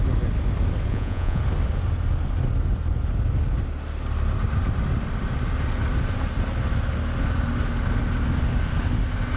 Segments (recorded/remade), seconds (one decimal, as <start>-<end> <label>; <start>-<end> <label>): 0.0-0.9 recorded; 0.9-1.4 remade; 1.4-9.4 recorded